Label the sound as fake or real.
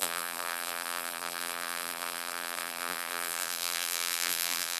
fake